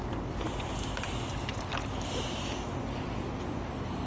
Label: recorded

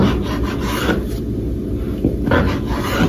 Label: recorded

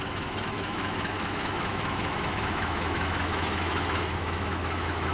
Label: remade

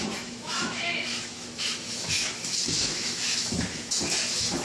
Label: remade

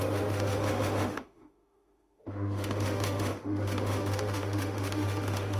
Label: remade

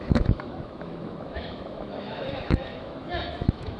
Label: remade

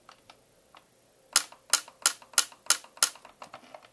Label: recorded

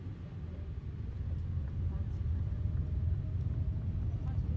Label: recorded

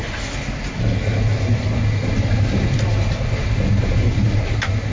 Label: recorded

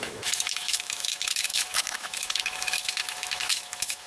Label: remade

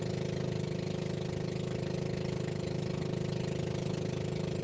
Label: recorded